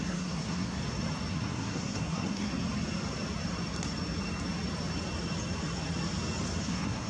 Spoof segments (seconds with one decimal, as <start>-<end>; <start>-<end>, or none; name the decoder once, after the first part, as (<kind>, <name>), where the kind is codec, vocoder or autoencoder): 0.0-0.8 (codec, SNAC); 1.3-2.5; 6.6-7.1